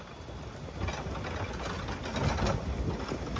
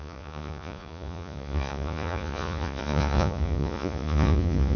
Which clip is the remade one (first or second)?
second